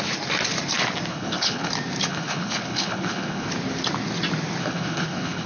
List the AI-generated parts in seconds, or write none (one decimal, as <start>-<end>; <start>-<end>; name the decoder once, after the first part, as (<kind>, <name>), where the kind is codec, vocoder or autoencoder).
1.1-1.7 (codec, HILCodec); 2.1-3.5; 4.6-5.5